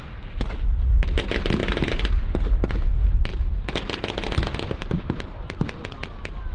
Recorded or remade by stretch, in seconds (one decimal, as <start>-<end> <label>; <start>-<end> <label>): 0.0-6.5 recorded